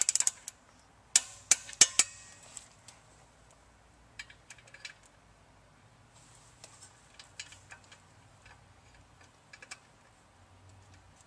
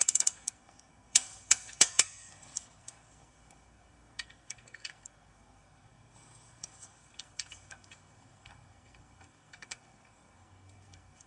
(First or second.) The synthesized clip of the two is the second